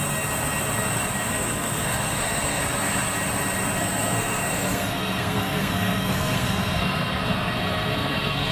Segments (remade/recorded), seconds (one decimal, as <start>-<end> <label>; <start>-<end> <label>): 0.0-1.3 recorded; 1.3-2.6 remade; 2.6-3.8 recorded; 3.8-8.5 remade